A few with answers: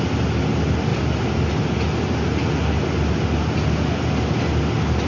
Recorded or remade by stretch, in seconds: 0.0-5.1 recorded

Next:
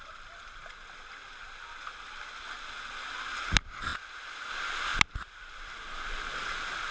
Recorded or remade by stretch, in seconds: 0.0-6.9 recorded

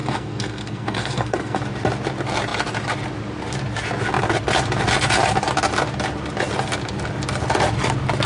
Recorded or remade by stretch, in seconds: 0.0-1.6 remade; 1.6-8.3 recorded

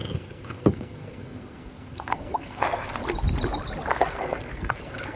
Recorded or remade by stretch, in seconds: 0.0-3.0 remade; 3.0-3.9 recorded; 3.9-5.2 remade

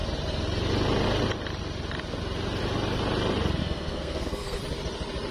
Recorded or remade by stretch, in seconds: 0.0-3.6 recorded; 3.6-4.6 remade; 4.6-5.3 recorded

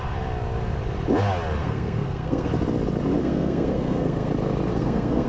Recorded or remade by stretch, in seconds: 0.0-1.6 recorded; 1.6-2.5 remade; 2.5-3.2 recorded; 3.2-4.3 remade; 4.3-4.7 recorded; 4.7-5.3 remade

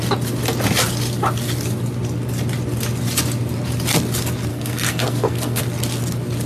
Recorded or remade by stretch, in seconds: 0.0-4.5 recorded; 4.5-5.6 remade; 5.6-6.5 recorded